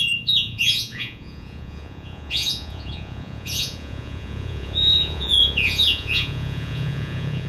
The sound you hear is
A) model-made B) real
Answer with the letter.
A